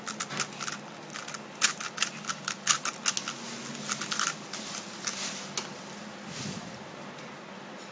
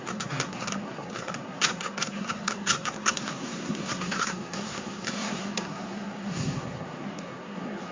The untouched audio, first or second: first